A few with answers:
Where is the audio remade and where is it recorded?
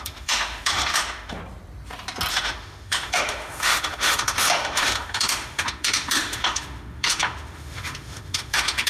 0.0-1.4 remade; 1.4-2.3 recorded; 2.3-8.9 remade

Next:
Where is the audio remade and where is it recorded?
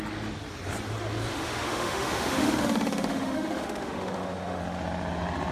0.0-1.3 recorded; 1.3-4.6 remade; 4.6-5.5 recorded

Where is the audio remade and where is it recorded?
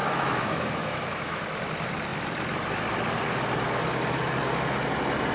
0.0-1.4 remade; 1.4-5.3 recorded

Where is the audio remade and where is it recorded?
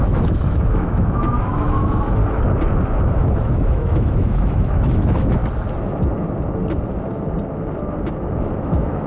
0.0-2.2 remade; 2.2-3.0 recorded; 3.0-5.4 remade; 5.4-8.4 recorded; 8.4-9.1 remade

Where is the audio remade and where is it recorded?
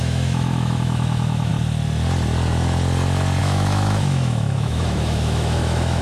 0.0-1.5 remade; 1.5-3.4 recorded; 3.4-6.0 remade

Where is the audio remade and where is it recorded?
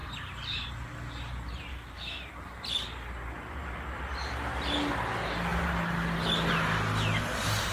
0.0-1.7 recorded; 1.7-2.3 remade; 2.3-7.7 recorded